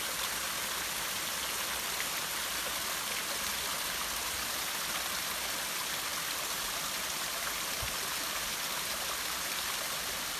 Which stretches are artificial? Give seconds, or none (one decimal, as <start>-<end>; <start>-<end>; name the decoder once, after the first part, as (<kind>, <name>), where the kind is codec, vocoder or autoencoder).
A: none